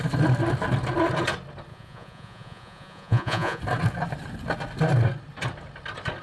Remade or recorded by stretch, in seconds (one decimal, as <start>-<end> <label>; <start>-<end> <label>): 0.0-1.7 recorded; 1.7-3.6 remade; 3.6-6.2 recorded